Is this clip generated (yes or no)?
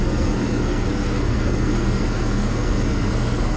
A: yes